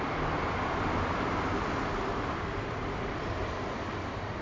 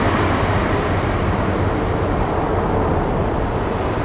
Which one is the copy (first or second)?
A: first